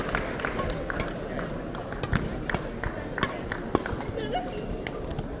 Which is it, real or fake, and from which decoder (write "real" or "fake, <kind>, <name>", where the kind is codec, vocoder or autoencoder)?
real